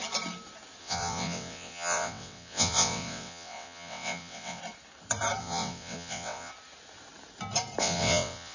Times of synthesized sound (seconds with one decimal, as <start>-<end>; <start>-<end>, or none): 0.8-4.6; 5.4-6.5; 7.8-8.5